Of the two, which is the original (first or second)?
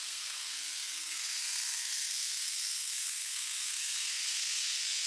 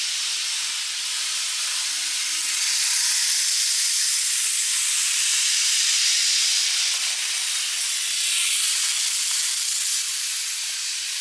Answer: second